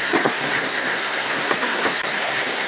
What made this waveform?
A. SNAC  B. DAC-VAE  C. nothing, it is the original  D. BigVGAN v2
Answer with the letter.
A